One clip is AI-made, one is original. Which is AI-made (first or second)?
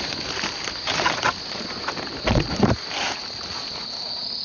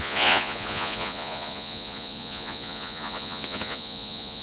second